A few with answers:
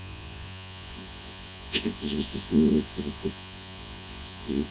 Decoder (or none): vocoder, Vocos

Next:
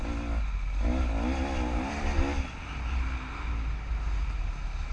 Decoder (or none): none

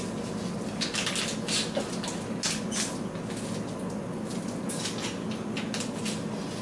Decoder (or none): none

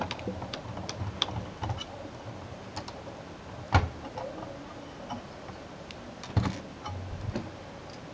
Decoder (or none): none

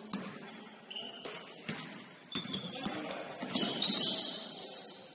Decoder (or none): none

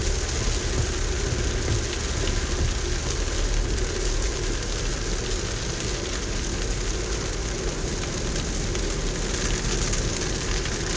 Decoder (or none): none